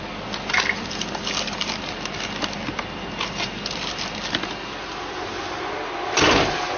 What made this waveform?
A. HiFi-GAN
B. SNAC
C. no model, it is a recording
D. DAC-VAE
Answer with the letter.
C